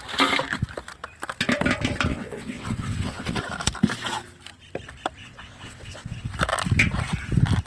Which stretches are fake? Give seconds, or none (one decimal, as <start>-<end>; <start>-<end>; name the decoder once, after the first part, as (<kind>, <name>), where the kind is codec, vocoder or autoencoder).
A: 2.1-3.4 (vocoder, WaveNeXt); 5.2-6.3